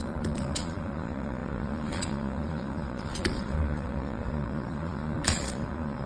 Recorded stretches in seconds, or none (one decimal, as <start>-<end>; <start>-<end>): none